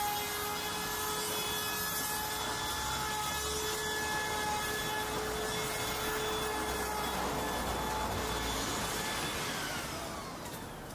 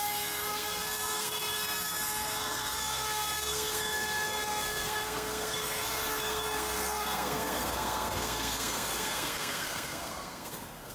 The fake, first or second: second